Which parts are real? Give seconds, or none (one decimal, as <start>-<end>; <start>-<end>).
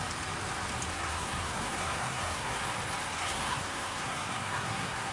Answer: 0.0-0.9; 2.6-3.0